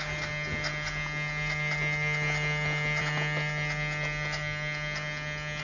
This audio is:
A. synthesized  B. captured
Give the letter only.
B